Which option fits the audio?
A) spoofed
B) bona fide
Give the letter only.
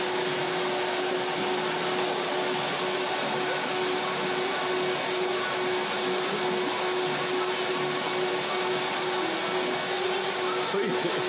B